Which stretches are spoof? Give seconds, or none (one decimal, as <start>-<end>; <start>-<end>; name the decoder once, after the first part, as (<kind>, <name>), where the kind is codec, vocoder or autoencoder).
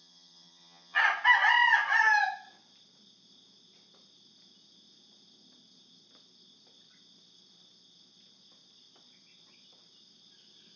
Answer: 0.0-1.0 (vocoder, HiFi-GAN)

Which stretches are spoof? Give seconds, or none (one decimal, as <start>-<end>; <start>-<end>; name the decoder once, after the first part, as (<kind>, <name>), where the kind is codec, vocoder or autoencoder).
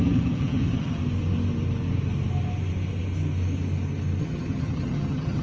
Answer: 0.0-1.0 (vocoder, HiFi-GAN); 4.2-5.4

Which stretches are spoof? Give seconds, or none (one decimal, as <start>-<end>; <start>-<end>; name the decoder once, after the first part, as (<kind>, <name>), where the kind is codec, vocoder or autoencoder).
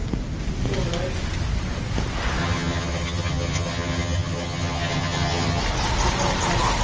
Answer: 2.4-5.6 (vocoder, HiFi-GAN)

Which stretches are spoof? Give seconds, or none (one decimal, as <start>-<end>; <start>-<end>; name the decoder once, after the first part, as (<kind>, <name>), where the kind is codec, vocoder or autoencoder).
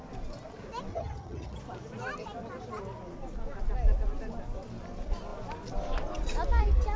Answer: 0.9-1.6 (vocoder, HiFi-GAN)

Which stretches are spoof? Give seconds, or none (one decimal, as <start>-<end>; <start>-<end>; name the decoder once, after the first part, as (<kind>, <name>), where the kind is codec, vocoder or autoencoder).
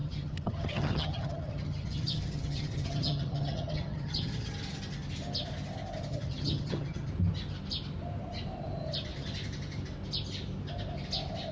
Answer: 0.0-4.5 (vocoder, HiFi-GAN); 6.1-7.1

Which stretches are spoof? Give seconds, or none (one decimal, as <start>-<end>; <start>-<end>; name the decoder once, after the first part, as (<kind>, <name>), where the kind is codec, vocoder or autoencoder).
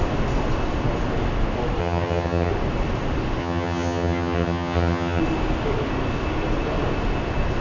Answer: 1.8-2.5 (vocoder, HiFi-GAN); 3.4-5.2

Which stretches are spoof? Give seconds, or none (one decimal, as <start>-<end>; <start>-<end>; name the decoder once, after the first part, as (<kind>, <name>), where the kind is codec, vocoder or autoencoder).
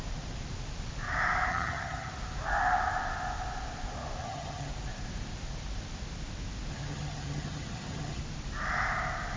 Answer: 1.5-2.1 (vocoder, HiFi-GAN); 4.2-4.7; 6.7-8.2